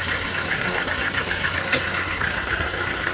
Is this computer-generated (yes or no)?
yes